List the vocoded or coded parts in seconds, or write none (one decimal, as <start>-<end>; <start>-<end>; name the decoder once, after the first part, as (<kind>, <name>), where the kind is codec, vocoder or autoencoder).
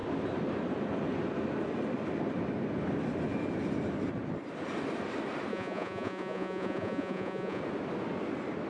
5.5-7.6 (vocoder, Vocos)